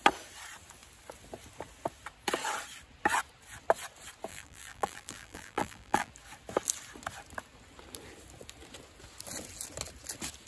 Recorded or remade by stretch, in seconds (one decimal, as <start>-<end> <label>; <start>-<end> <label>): 0.0-4.3 recorded; 4.3-6.1 remade; 6.1-10.5 recorded